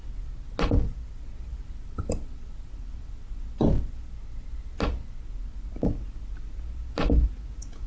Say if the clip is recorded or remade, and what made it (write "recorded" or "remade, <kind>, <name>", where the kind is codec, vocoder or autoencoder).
recorded